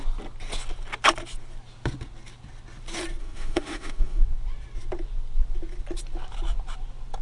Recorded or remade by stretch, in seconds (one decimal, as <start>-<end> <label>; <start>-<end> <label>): 0.0-3.2 recorded; 3.2-4.2 remade; 4.2-7.2 recorded